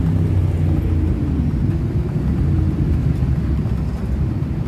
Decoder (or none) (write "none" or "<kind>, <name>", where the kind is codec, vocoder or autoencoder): none